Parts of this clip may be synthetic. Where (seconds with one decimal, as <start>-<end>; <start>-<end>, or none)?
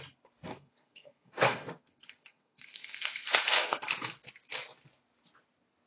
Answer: 0.5-3.9